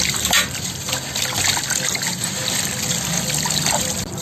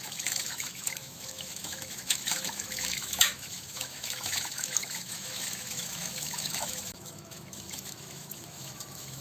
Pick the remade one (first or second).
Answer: second